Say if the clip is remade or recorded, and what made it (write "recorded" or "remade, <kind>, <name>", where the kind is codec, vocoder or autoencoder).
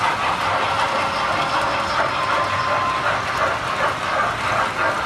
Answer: recorded